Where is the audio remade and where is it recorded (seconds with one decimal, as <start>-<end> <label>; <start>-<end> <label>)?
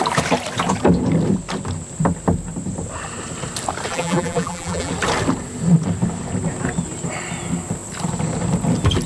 0.0-3.9 recorded; 3.9-4.9 remade; 4.9-9.1 recorded